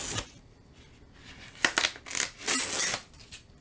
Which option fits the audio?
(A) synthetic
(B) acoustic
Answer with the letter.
B